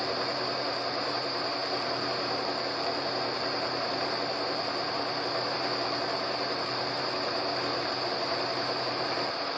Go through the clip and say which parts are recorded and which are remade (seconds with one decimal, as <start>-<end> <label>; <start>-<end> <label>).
0.0-1.6 remade; 1.6-2.3 recorded; 2.3-9.6 remade